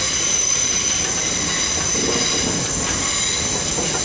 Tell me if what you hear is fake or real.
real